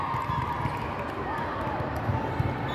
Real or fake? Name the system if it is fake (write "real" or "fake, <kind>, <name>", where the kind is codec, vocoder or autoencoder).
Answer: real